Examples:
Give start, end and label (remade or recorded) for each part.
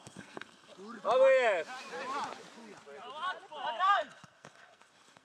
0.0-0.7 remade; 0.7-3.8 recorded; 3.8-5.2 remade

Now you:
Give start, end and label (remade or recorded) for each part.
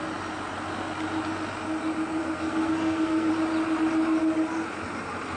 0.0-2.2 recorded; 2.2-3.3 remade; 3.3-5.4 recorded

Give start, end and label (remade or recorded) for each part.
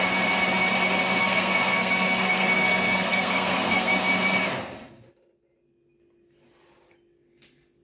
0.0-1.2 recorded; 1.2-3.9 remade; 3.9-7.8 recorded